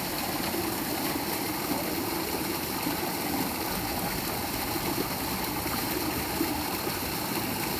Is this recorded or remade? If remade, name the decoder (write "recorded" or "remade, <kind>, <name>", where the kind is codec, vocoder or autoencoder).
recorded